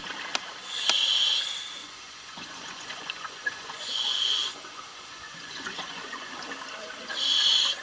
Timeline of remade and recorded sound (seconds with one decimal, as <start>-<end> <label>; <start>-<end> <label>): 0.0-1.8 recorded; 1.8-6.3 remade; 6.3-7.8 recorded